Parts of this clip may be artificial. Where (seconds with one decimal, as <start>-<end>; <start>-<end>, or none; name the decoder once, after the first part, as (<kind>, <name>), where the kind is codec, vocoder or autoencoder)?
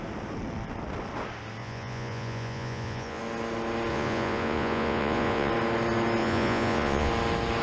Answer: 1.6-3.2 (vocoder, Vocos); 3.9-5.5; 6.2-7.1